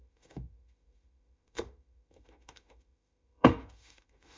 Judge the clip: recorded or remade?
remade